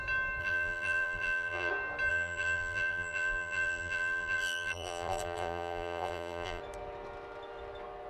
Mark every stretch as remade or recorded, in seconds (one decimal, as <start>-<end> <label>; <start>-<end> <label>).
0.0-0.4 recorded; 0.4-1.7 remade; 1.7-2.1 recorded; 2.1-6.6 remade; 6.6-8.1 recorded